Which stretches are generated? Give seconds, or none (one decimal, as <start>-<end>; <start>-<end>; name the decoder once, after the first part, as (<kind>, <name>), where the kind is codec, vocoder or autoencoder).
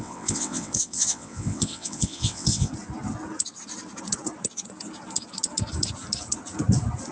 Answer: 0.0-2.7 (vocoder, WaveNeXt)